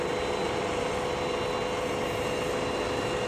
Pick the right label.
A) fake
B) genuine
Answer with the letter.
B